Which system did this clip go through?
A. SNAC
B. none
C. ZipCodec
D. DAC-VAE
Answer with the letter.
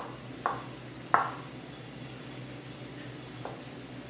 B